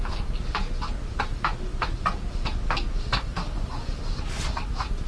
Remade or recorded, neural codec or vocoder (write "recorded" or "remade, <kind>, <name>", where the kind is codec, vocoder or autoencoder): recorded